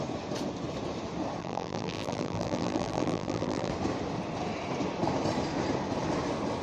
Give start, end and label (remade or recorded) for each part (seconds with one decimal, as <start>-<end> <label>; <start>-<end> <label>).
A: 0.0-1.4 recorded; 1.4-3.7 remade; 3.7-6.6 recorded